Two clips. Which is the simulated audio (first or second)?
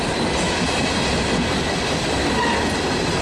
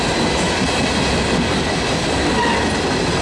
first